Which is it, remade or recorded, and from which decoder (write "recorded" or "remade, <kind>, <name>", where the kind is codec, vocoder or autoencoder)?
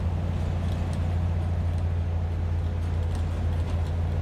recorded